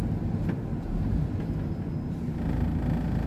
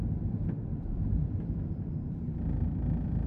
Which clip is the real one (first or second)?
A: first